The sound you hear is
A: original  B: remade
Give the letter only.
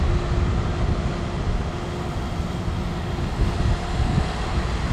A